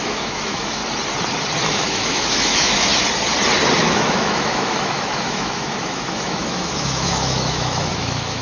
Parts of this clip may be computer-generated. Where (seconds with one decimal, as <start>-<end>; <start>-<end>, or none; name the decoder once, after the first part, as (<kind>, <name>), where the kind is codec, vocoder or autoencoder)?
0.0-0.8 (autoencoder, DAC-VAE); 1.6-2.9; 3.8-8.4